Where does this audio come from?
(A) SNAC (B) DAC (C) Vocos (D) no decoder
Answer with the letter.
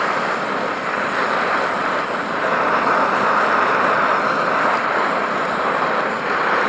D